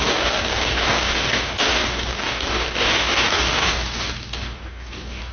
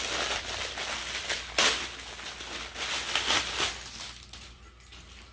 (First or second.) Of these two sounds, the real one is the second